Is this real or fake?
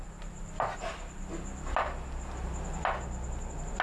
real